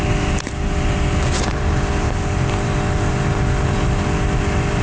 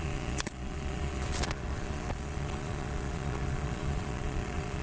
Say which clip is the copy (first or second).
second